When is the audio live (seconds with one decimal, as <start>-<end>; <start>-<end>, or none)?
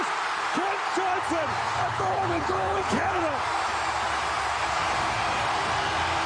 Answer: 0.0-1.8; 3.2-6.3